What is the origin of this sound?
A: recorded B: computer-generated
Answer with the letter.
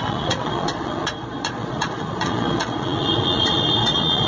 B